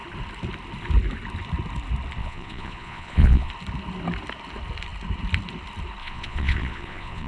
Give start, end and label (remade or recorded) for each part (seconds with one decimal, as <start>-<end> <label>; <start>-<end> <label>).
0.0-2.2 recorded; 2.2-3.5 remade; 3.5-6.0 recorded; 6.0-7.3 remade